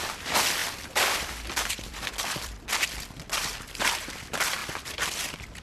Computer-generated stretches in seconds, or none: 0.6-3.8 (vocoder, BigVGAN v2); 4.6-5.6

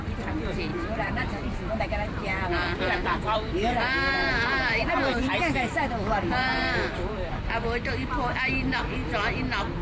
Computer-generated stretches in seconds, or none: 0.7-4.8 (vocoder, BigVGAN v2); 6.4-8.1

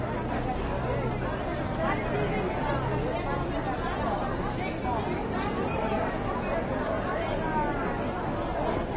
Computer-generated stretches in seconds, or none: 5.2-7.4 (vocoder, BigVGAN v2)

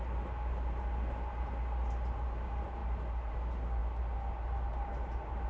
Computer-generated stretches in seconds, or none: 2.8-3.3 (vocoder, BigVGAN v2)

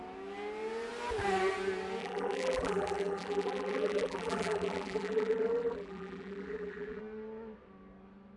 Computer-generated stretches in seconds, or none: 2.0-7.0 (vocoder, BigVGAN v2)

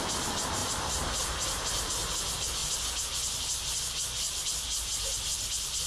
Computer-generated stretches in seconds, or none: 0.6-1.9 (vocoder, BigVGAN v2)